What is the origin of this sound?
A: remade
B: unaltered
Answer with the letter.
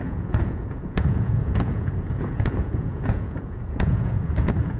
A